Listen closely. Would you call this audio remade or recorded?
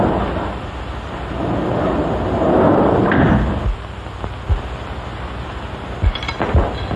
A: recorded